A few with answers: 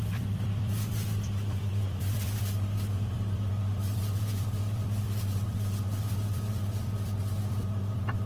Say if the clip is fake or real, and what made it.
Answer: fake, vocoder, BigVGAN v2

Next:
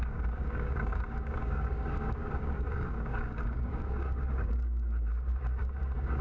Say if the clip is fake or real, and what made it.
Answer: fake, codec, DAC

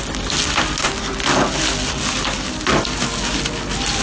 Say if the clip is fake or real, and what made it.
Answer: real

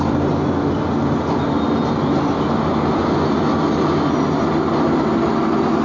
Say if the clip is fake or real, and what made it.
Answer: real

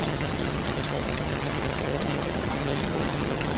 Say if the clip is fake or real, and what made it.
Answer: fake, vocoder, HiFi-GAN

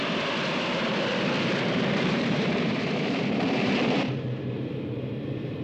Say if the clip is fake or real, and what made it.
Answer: fake, vocoder, BigVGAN v2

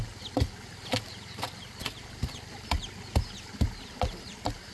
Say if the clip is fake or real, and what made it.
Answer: real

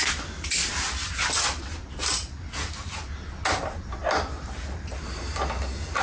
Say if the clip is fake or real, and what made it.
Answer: real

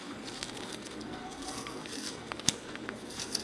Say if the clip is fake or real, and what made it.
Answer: fake, codec, SNAC